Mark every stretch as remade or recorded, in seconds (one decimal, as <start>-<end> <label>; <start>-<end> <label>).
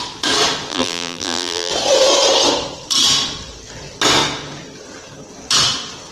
0.0-0.7 recorded; 0.7-1.7 remade; 1.7-6.1 recorded